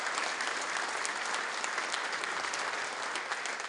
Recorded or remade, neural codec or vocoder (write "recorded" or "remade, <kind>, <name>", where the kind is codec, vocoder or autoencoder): recorded